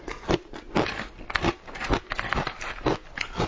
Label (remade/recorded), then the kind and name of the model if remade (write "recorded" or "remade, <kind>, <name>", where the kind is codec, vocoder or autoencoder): recorded